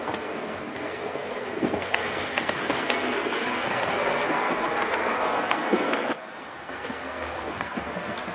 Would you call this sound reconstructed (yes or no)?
yes